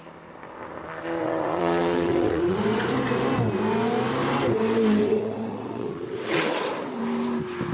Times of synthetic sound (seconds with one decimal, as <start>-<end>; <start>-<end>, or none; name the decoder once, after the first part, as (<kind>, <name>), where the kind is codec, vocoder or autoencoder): 1.2-2.6 (vocoder, WaveNeXt); 5.0-7.0